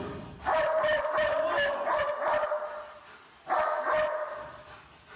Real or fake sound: real